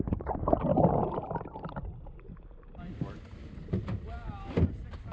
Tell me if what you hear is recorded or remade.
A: recorded